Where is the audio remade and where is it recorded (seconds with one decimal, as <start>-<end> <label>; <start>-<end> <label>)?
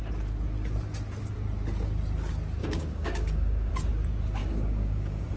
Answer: 0.0-2.6 recorded; 2.6-3.7 remade; 3.7-4.4 recorded; 4.4-5.4 remade